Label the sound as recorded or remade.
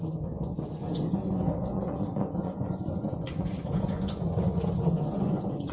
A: remade